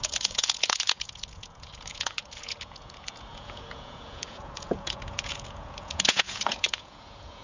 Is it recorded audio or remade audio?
remade